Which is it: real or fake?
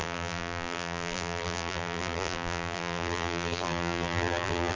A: fake